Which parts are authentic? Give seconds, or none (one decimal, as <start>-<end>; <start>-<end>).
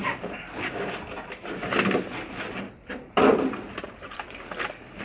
0.0-3.3; 4.5-5.0